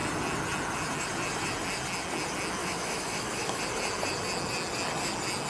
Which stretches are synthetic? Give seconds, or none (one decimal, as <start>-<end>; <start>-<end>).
2.6-3.6